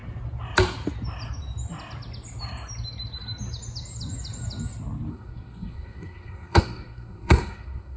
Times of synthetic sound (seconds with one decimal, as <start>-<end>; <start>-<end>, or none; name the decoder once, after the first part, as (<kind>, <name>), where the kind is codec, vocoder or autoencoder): 5.1-8.0 (codec, SNAC)

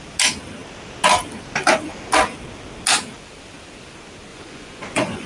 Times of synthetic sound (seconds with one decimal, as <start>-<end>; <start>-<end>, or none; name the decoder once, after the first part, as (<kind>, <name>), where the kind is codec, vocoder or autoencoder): 4.3-5.3 (vocoder, Vocos)

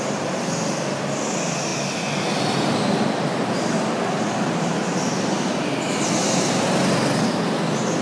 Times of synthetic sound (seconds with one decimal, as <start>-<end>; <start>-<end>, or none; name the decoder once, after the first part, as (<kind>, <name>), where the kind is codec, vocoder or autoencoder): none

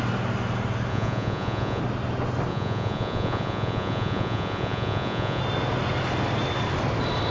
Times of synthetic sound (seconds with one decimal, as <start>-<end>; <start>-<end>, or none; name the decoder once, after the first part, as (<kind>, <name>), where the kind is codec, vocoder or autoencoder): 0.9-1.8 (vocoder, Vocos); 2.5-5.4